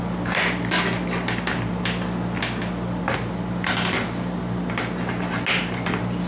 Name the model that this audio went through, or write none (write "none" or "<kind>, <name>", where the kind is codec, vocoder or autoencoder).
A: none